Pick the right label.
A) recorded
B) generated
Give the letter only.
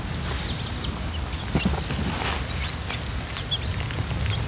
A